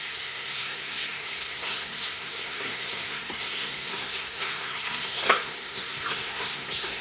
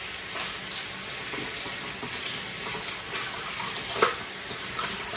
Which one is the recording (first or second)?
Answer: second